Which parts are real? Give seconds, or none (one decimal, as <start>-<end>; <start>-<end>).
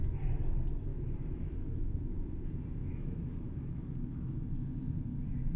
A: 0.0-0.9; 1.9-2.8; 4.3-5.6